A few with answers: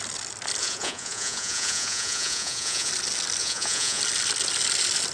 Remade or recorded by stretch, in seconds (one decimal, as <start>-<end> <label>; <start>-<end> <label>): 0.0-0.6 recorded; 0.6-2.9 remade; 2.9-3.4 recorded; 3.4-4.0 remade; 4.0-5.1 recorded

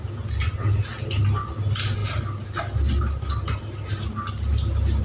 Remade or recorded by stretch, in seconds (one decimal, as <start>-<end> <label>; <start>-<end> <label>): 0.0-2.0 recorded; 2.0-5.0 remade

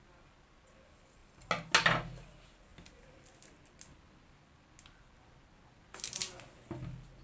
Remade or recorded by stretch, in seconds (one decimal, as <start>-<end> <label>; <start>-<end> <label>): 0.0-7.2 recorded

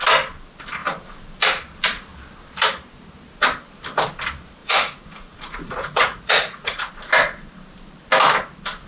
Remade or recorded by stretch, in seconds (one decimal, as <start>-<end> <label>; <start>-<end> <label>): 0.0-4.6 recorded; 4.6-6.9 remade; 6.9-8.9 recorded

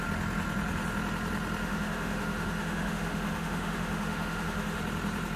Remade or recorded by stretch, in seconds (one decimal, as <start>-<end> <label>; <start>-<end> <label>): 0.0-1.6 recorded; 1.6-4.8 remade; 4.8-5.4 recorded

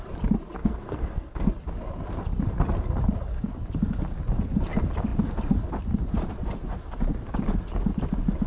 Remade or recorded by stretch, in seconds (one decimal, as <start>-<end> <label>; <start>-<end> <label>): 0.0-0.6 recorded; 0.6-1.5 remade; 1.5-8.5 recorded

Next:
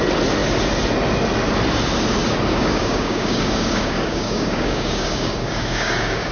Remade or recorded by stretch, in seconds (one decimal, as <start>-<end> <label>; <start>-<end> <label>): 0.0-2.5 recorded; 2.5-6.3 remade